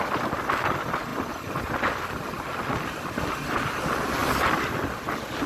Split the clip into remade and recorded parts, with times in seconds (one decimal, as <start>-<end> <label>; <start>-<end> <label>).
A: 0.0-1.1 recorded; 1.1-1.7 remade; 1.7-5.5 recorded